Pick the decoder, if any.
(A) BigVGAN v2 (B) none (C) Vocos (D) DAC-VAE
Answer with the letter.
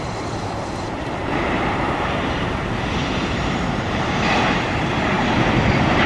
A